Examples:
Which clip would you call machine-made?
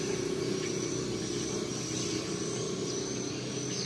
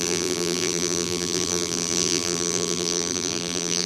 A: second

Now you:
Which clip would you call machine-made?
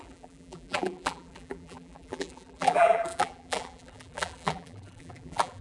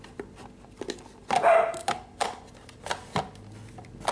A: first